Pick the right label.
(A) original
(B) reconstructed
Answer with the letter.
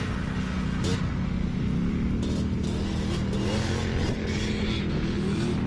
A